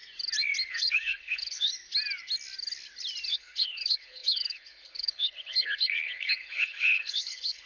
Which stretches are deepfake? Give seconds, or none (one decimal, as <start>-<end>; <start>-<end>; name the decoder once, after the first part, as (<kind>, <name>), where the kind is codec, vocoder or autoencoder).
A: 0.7-1.7 (codec, HILCodec); 3.3-7.7